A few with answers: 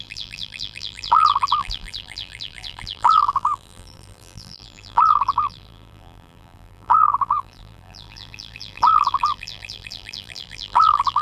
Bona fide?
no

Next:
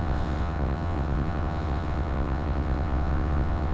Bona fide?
no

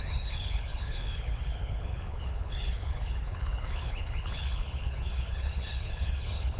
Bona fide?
no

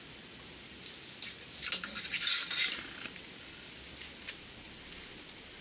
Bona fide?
yes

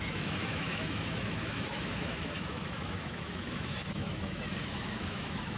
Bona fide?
no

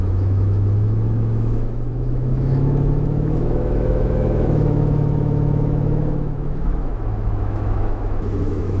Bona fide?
no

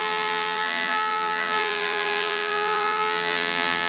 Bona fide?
no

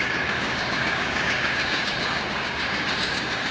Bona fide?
no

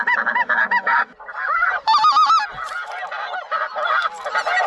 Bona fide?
yes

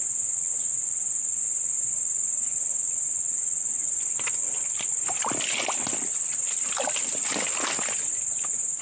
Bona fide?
yes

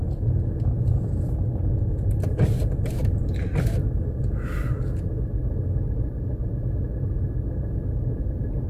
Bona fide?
yes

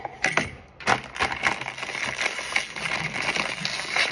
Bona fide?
yes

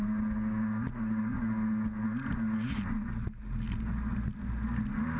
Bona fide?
yes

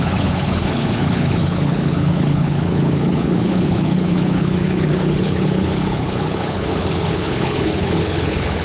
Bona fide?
no